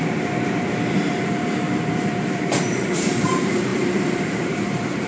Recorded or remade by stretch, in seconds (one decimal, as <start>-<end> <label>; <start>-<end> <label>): 0.0-5.1 remade